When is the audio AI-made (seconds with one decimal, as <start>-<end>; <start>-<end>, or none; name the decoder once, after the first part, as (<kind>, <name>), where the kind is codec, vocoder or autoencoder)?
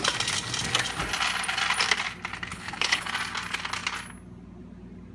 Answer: 2.5-3.1 (codec, HILCodec)